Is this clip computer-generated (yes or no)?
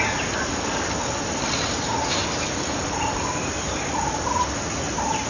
no